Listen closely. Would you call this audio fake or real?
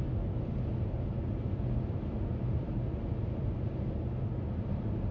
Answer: real